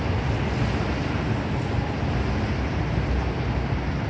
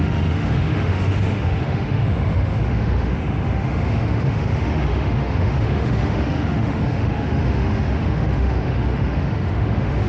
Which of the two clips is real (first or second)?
first